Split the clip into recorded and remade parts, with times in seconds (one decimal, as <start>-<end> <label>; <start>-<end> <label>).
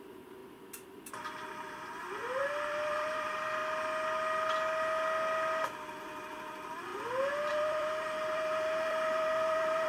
0.0-0.4 remade; 0.4-1.1 recorded; 1.1-3.6 remade; 3.6-6.0 recorded; 6.0-6.9 remade; 6.9-7.5 recorded; 7.5-9.9 remade